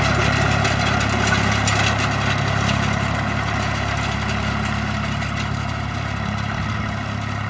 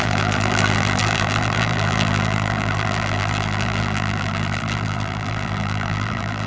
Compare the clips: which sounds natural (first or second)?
first